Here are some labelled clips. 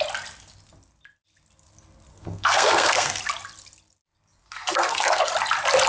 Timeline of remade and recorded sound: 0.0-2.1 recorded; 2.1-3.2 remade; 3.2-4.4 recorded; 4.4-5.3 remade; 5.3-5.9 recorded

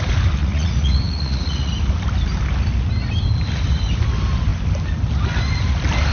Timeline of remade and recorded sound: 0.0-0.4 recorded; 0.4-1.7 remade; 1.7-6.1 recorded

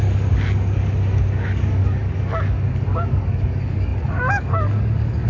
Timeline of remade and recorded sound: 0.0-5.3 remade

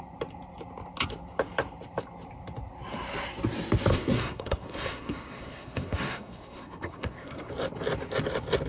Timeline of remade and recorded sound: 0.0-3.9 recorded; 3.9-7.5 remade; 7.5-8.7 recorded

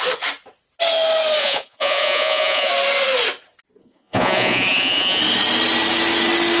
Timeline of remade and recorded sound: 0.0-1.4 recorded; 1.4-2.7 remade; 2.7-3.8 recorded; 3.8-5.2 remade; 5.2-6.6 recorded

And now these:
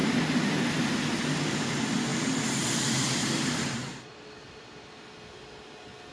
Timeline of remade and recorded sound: 0.0-6.1 recorded

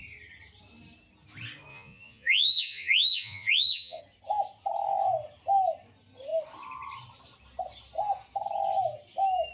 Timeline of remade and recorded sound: 0.0-1.7 recorded; 1.7-4.0 remade; 4.0-9.5 recorded